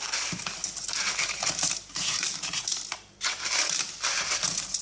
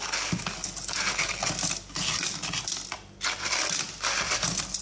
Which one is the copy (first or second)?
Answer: first